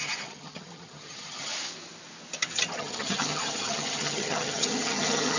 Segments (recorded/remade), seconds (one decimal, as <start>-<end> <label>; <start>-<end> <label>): 0.0-1.5 remade; 1.5-2.8 recorded; 2.8-5.4 remade